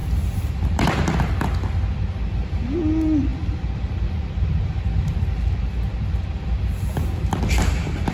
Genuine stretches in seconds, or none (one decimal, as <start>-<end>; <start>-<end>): 1.3-3.3; 6.6-8.1